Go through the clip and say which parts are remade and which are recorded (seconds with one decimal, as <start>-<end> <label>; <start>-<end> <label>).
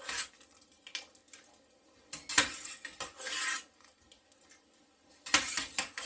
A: 0.0-6.1 recorded